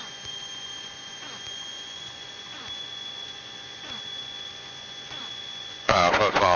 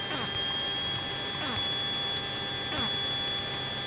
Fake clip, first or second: first